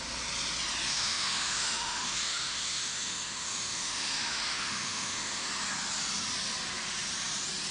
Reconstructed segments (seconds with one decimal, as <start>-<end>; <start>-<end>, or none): 0.9-5.5